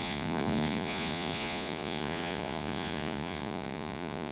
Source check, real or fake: fake